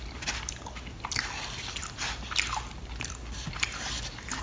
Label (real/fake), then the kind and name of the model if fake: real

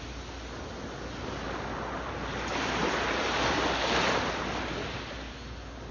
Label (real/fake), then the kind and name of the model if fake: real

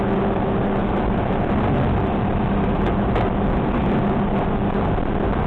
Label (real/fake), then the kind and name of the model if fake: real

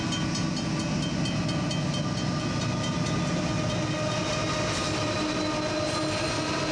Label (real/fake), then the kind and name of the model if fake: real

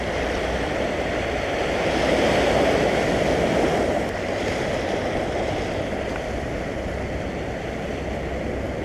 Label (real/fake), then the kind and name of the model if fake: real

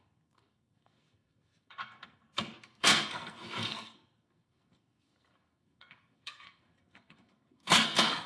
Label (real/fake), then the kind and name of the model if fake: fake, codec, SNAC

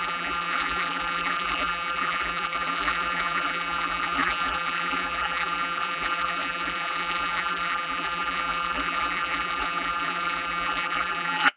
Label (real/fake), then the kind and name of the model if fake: fake, vocoder, BigVGAN v2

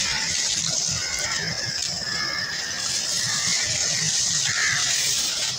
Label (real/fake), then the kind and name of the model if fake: fake, vocoder, BigVGAN v2